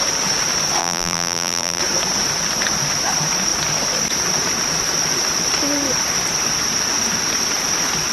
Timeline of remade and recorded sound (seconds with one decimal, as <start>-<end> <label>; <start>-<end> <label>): 0.0-0.8 recorded; 0.8-1.8 remade; 1.8-8.1 recorded